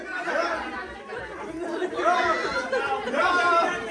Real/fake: real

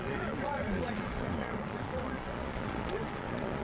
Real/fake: fake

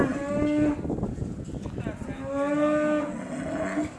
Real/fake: real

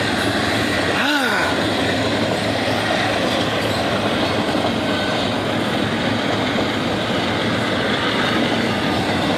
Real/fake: real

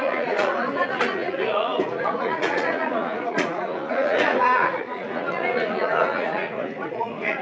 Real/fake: fake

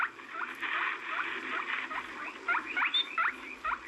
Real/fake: real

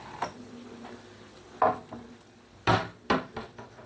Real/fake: real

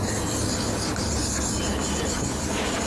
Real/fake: real